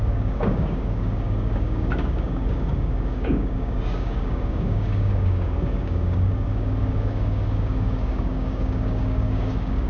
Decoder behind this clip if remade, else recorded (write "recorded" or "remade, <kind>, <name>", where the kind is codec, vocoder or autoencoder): remade, codec, DAC